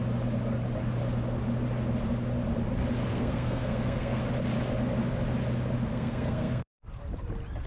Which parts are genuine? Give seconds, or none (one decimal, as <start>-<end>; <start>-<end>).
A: 0.0-3.1; 4.2-5.9; 6.9-7.7